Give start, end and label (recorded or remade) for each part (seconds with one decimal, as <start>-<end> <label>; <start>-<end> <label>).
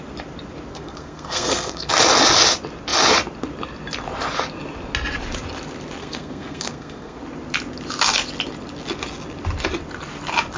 0.0-0.7 recorded; 0.7-1.9 remade; 1.9-6.0 recorded; 6.0-7.2 remade; 7.2-10.6 recorded